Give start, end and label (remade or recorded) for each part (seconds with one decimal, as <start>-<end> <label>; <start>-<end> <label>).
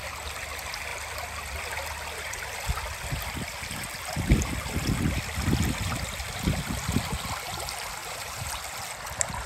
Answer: 0.0-8.0 recorded; 8.0-8.5 remade; 8.5-9.5 recorded